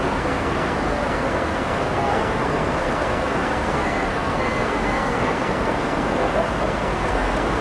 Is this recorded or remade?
remade